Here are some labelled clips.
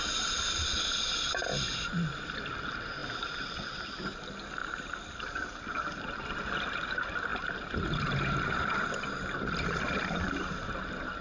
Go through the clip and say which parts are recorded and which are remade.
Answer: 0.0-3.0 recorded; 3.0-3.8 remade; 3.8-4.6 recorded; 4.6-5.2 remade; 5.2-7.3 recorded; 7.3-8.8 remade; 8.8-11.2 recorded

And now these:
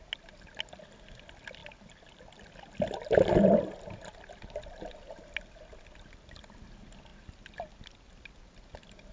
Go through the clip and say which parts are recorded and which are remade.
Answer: 0.0-9.1 recorded